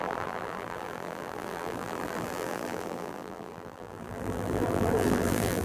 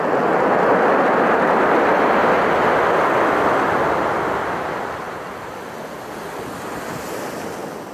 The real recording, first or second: second